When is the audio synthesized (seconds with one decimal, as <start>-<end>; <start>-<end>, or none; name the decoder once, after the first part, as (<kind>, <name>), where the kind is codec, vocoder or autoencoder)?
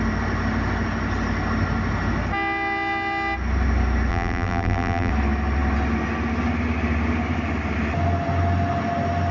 4.1-5.1 (vocoder, BigVGAN v2)